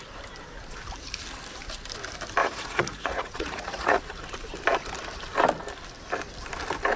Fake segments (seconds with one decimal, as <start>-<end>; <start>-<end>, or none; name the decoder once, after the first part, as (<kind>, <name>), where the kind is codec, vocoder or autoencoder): 2.4-4.0 (vocoder, Vocos)